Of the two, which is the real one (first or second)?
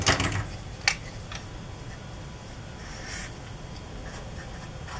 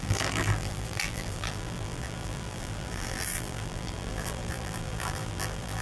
first